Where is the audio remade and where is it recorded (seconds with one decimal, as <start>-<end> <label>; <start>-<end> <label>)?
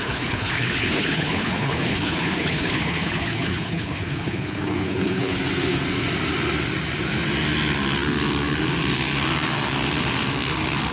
0.0-5.4 remade; 5.4-10.9 recorded